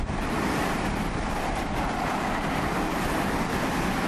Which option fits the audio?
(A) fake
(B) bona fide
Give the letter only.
A